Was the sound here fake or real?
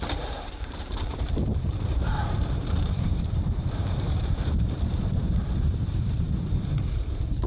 fake